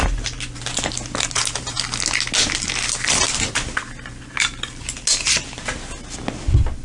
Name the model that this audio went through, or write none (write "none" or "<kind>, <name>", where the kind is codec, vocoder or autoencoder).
none